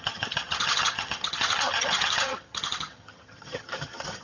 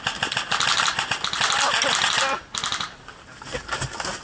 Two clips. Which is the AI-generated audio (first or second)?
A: first